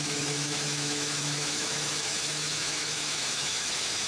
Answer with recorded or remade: remade